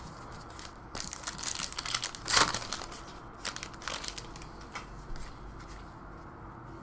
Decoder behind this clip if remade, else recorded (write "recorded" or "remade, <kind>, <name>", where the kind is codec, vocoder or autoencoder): recorded